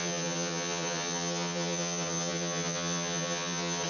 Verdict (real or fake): fake